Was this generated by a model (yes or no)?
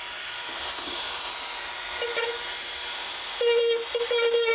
no